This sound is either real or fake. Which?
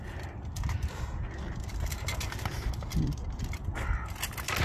real